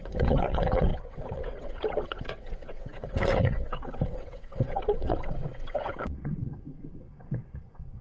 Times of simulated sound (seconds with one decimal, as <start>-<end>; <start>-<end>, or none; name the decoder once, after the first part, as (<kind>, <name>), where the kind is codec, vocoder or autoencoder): 0.0-8.0 (vocoder, WaveNeXt)